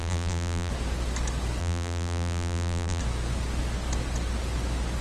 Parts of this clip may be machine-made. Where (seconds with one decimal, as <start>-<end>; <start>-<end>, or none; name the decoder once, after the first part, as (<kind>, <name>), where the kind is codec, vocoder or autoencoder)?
0.0-0.7 (vocoder, BigVGAN v2); 1.6-3.0